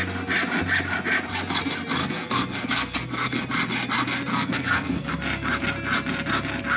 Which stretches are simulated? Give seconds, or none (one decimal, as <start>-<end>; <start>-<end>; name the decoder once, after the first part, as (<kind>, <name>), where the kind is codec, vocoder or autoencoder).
2.0-3.4 (codec, SNAC); 4.3-5.1